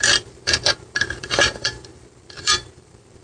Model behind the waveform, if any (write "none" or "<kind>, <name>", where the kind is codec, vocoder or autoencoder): vocoder, BigVGAN v2